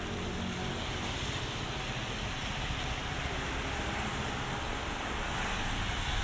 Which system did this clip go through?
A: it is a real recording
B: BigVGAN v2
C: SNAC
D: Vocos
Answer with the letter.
A